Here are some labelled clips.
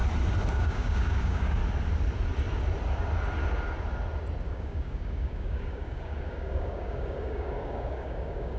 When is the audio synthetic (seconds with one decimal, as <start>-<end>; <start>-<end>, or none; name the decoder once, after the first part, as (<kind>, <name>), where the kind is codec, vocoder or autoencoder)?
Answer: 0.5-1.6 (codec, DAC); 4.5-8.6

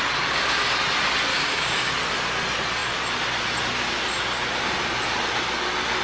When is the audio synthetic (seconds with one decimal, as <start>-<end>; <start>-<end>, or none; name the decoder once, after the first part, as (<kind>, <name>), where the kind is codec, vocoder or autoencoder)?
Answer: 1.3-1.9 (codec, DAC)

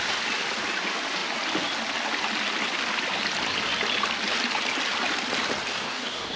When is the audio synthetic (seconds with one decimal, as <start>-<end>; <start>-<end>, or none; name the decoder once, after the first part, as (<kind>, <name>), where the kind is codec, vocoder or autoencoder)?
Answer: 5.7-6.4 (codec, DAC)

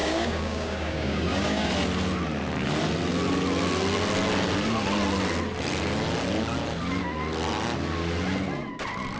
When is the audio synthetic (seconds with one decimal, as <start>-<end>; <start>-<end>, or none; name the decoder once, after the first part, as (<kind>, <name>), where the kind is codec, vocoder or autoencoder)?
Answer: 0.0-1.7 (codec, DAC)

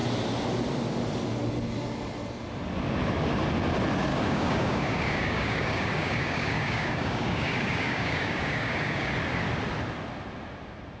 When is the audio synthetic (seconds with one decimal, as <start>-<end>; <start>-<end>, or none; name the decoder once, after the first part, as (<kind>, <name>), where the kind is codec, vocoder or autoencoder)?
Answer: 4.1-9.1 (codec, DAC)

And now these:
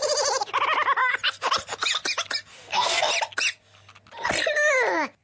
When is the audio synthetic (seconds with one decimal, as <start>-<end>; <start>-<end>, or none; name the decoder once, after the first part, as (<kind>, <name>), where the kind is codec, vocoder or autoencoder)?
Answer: 2.5-3.1 (codec, DAC)

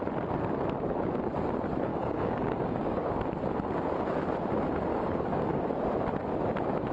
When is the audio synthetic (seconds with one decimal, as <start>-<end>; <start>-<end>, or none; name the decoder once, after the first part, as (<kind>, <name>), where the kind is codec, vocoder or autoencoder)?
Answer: 1.9-3.1 (codec, DAC); 4.9-5.7